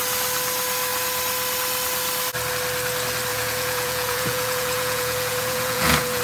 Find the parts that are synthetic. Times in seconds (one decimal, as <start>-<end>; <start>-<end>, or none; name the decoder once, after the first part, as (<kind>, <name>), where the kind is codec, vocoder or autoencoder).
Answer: 3.3-6.2 (vocoder, Vocos)